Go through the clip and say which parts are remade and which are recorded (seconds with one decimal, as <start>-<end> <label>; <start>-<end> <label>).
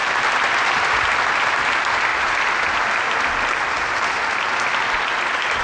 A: 0.0-5.6 recorded